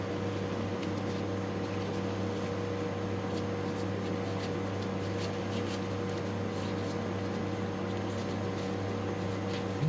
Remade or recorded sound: recorded